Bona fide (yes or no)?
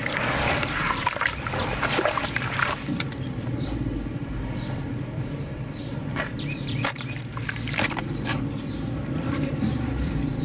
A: no